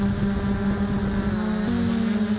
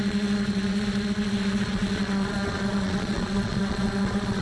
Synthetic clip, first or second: second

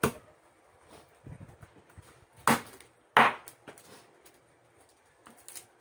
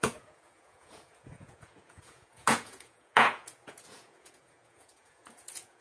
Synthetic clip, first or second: second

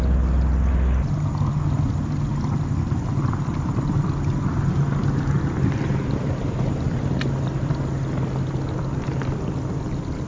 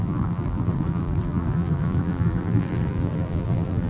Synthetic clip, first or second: second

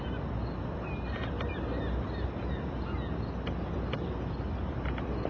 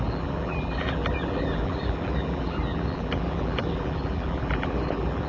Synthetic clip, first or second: second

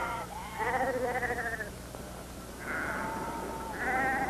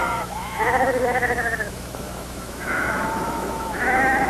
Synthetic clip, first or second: second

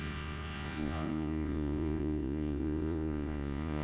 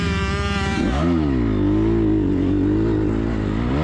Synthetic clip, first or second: first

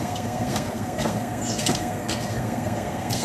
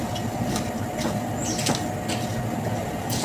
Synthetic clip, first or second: first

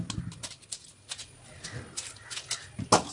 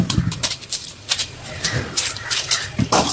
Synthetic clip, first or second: second